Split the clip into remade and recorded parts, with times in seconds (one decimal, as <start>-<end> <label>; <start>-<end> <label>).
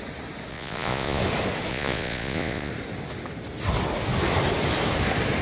0.0-0.5 recorded; 0.5-1.2 remade; 1.2-1.7 recorded; 1.7-2.7 remade; 2.7-5.4 recorded